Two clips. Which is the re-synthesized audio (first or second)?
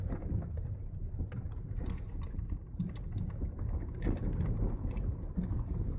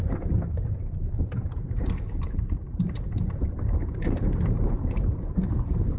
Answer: second